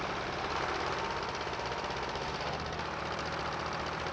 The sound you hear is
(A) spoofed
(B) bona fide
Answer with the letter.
B